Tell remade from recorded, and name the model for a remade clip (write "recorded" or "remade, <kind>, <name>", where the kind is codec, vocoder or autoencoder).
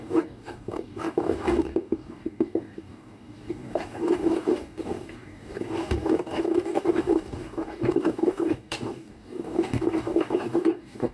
remade, codec, DAC